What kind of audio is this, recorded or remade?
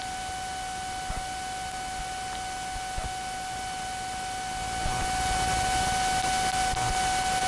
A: recorded